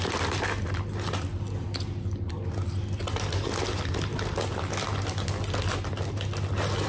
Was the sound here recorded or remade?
recorded